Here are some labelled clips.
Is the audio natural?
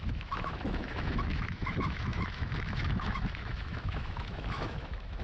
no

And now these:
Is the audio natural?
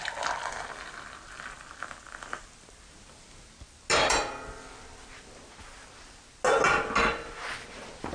yes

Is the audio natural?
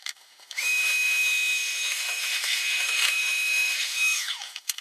no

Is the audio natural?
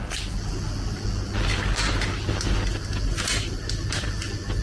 yes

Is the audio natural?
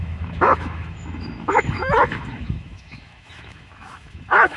no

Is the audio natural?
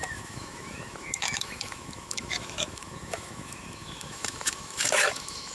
no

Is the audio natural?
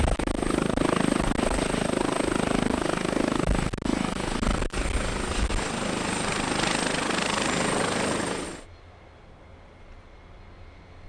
yes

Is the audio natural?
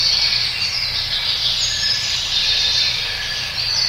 yes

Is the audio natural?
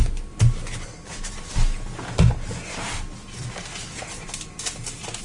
yes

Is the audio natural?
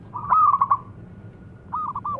yes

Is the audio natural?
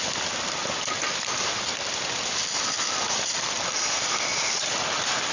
yes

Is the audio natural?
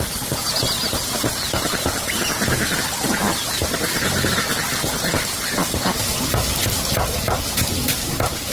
yes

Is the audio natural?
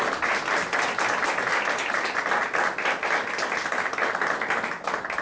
yes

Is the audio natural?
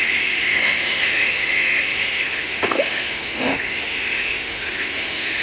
no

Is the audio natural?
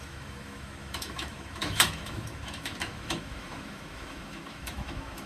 no